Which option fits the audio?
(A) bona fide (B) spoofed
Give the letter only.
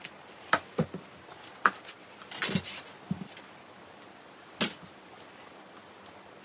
A